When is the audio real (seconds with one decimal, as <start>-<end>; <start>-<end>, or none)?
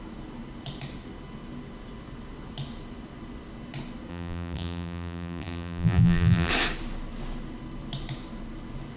0.0-4.1; 6.5-9.0